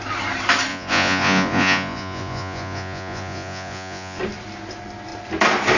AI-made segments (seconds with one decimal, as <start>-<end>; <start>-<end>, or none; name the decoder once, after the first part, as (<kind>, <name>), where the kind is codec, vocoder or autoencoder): 0.7-4.2 (vocoder, Vocos)